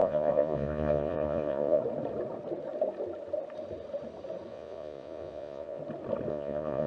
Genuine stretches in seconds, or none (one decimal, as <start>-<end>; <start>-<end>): 1.8-4.5; 5.8-6.3